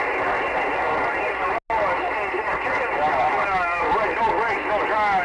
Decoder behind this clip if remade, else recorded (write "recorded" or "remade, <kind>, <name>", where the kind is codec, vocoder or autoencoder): recorded